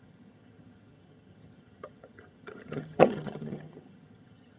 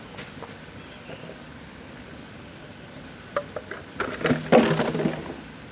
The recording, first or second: second